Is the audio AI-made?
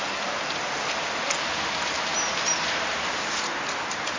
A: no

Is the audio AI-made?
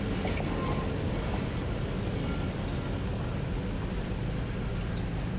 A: no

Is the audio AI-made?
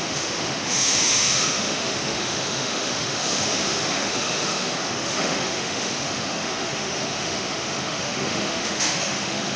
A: yes